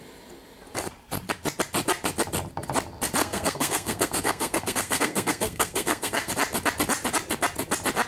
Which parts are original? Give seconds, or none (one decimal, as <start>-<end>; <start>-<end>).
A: 0.0-3.2; 6.3-8.1